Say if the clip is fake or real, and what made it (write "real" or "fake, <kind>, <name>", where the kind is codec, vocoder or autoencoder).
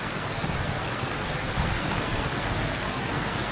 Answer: fake, codec, SNAC